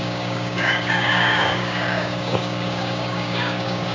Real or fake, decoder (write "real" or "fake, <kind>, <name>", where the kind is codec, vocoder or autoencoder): fake, codec, DAC